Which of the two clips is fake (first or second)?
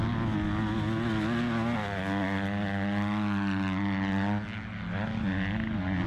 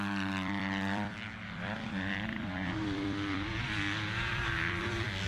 second